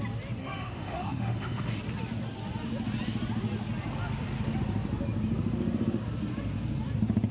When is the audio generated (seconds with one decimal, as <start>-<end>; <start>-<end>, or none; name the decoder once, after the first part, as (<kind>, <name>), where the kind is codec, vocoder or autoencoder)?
0.4-1.8 (autoencoder, DAC-VAE)